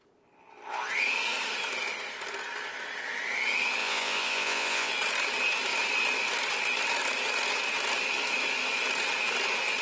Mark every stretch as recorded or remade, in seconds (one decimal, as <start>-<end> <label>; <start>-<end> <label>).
0.0-3.8 recorded; 3.8-4.9 remade; 4.9-9.8 recorded